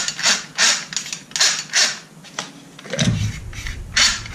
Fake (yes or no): no